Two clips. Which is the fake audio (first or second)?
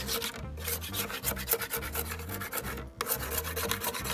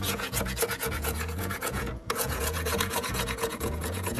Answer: second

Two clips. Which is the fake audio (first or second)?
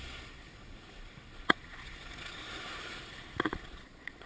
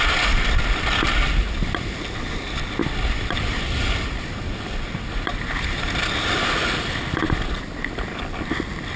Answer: first